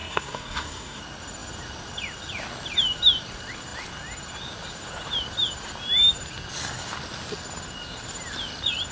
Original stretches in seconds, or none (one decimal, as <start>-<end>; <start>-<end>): 1.0-8.9